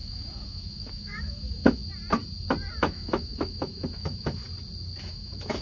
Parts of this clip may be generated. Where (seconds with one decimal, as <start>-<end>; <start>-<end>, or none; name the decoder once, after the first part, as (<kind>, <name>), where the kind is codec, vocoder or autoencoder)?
0.0-1.8 (autoencoder, DAC-VAE); 2.8-4.4; 5.0-5.6